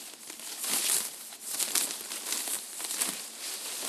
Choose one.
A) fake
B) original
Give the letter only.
B